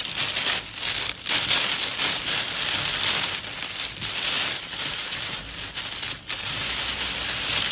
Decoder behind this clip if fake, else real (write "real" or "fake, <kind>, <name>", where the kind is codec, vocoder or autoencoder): real